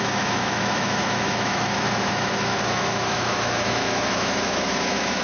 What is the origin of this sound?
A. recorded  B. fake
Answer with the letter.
B